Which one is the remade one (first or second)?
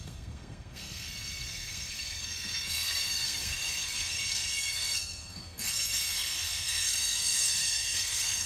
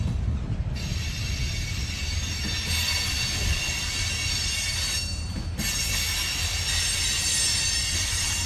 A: first